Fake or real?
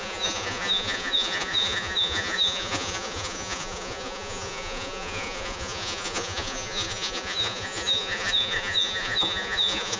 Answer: fake